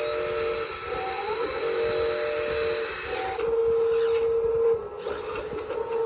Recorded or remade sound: recorded